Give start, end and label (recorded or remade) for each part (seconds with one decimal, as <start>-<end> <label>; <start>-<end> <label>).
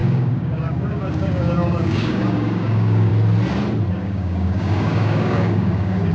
0.0-3.1 remade; 3.1-3.9 recorded; 3.9-6.1 remade